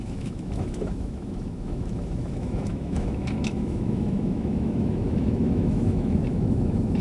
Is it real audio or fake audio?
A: fake